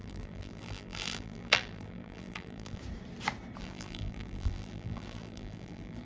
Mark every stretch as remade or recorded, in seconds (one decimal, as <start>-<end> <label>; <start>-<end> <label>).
0.0-2.8 remade; 2.8-3.6 recorded; 3.6-6.0 remade